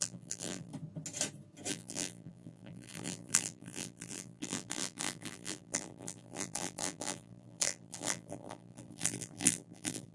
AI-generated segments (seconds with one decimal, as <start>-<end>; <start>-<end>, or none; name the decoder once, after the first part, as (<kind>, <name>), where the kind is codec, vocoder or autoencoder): 0.0-0.7 (vocoder, BigVGAN v2); 1.7-10.1

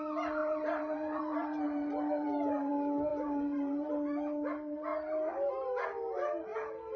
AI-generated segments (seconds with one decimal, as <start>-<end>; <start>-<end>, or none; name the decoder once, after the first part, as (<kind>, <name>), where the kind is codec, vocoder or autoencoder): 0.4-2.7 (vocoder, BigVGAN v2); 3.1-3.9

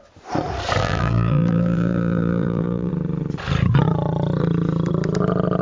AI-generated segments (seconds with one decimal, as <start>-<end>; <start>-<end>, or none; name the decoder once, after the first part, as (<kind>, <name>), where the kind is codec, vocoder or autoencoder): 0.8-2.9 (vocoder, BigVGAN v2)

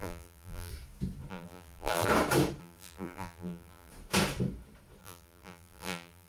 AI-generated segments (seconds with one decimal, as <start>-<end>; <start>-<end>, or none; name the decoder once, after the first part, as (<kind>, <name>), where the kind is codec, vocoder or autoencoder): 0.0-0.7 (vocoder, BigVGAN v2); 1.3-2.1; 2.6-3.9; 5.0-6.3

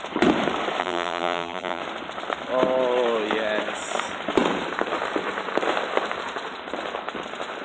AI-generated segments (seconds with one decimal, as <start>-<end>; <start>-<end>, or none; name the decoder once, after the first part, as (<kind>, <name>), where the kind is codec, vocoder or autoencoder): 0.8-1.8 (vocoder, BigVGAN v2)

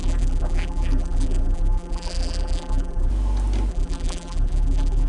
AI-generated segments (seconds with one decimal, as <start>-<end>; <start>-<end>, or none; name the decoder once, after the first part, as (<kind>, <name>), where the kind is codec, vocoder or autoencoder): 0.0-3.1 (vocoder, BigVGAN v2); 3.7-5.1

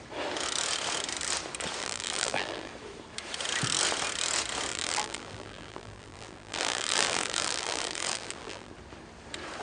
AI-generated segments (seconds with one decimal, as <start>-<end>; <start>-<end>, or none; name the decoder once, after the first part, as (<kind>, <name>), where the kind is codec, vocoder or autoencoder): 1.8-2.7 (vocoder, BigVGAN v2); 4.7-8.7